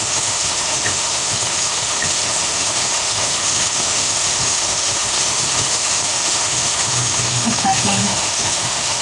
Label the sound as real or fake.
fake